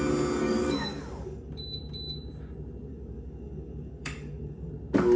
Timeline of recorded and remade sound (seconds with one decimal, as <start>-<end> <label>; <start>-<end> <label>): 0.0-0.4 recorded; 0.4-1.5 remade; 1.5-2.9 recorded; 2.9-4.7 remade; 4.7-5.2 recorded